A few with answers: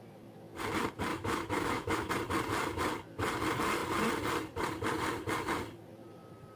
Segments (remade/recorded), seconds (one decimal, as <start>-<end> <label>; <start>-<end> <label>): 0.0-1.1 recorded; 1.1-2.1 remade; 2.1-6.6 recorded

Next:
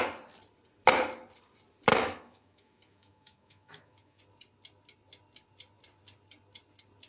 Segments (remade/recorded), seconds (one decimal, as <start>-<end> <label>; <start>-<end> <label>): 0.0-1.9 recorded; 1.9-4.2 remade; 4.2-7.1 recorded

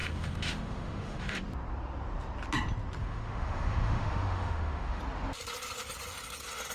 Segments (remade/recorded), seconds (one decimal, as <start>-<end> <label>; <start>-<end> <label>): 0.0-1.4 remade; 1.4-3.0 recorded; 3.0-5.0 remade; 5.0-6.7 recorded

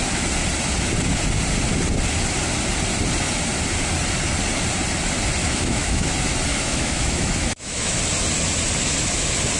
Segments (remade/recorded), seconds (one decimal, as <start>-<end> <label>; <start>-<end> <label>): 0.0-5.4 recorded; 5.4-6.1 remade; 6.1-6.5 recorded; 6.5-8.0 remade; 8.0-9.6 recorded